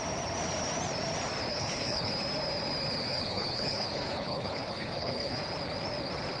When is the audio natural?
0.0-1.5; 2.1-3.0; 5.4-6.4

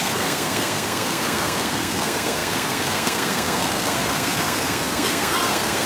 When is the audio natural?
none

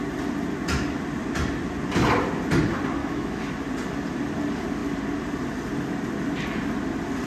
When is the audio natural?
0.0-3.0; 3.5-7.3

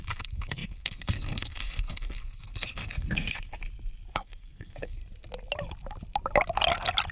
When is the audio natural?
3.6-4.1; 5.0-7.1